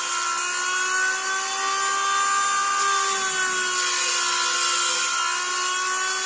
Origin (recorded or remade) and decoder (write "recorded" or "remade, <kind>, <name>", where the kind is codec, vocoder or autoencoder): recorded